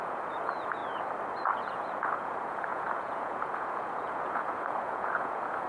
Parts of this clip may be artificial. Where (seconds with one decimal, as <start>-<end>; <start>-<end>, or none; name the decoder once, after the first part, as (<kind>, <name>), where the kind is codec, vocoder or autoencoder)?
0.0-0.8 (vocoder, Vocos); 1.6-5.7